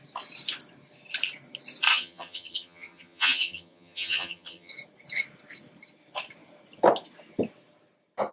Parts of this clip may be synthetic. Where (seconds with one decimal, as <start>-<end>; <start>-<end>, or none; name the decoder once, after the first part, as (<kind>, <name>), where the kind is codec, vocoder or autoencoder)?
1.9-4.7 (vocoder, HiFi-GAN)